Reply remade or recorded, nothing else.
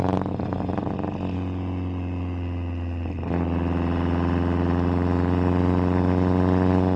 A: recorded